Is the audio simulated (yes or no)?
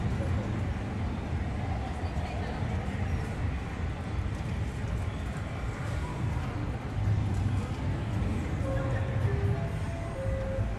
no